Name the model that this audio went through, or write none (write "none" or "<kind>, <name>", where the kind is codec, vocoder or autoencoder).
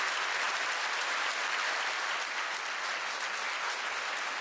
none